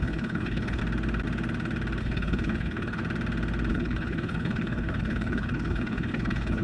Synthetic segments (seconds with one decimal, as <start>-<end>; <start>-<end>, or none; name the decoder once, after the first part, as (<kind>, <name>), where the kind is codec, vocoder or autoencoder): 0.0-0.8 (codec, HILCodec); 2.0-3.0; 3.7-6.6